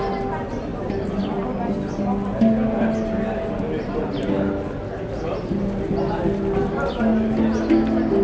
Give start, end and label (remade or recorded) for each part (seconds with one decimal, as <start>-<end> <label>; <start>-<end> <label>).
0.0-8.2 recorded